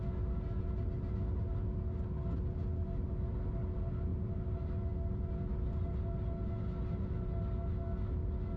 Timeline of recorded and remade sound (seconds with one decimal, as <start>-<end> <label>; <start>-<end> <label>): 0.0-8.6 recorded